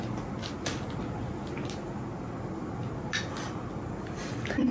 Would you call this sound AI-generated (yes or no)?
no